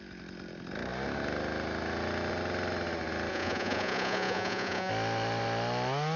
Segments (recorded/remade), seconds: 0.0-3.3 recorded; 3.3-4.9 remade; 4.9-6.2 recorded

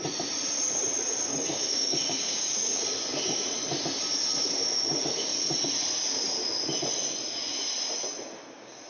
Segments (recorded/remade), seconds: 0.0-1.3 recorded; 1.3-2.8 remade; 2.8-8.9 recorded

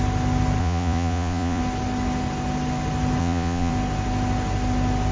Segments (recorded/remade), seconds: 0.0-0.6 recorded; 0.6-1.6 remade; 1.6-3.2 recorded; 3.2-3.7 remade; 3.7-5.1 recorded

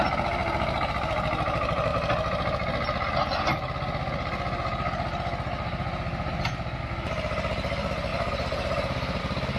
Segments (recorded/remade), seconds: 0.0-8.1 recorded; 8.1-9.2 remade; 9.2-9.6 recorded

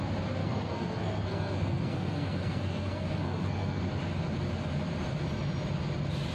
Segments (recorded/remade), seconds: 0.0-0.4 recorded; 0.4-3.8 remade; 3.8-6.3 recorded

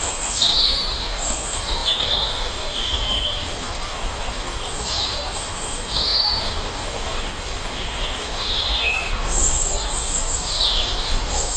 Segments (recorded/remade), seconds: 0.0-11.6 remade

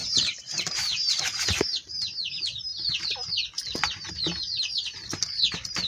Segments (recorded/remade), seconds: 0.0-1.1 remade; 1.1-5.9 recorded